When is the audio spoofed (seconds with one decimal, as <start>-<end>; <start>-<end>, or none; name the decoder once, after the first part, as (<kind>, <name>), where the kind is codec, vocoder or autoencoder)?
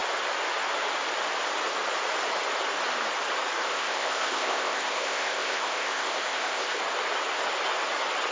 3.7-6.8 (codec, ZipCodec)